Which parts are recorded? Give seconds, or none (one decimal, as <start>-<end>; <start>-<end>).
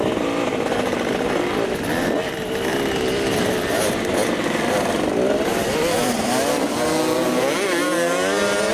0.0-2.7; 4.7-6.0; 6.7-8.7